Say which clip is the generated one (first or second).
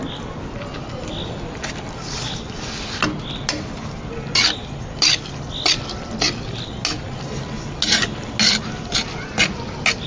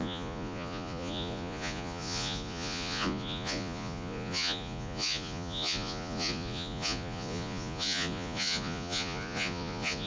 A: second